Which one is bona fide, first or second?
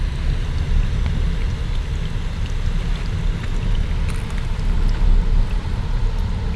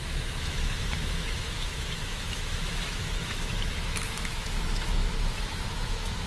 first